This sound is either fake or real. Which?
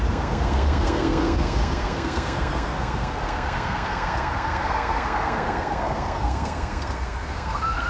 fake